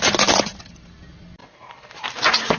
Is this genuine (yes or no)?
yes